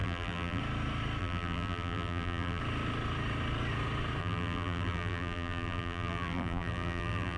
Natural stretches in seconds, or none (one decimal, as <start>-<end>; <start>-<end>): 0.6-1.2; 2.6-4.2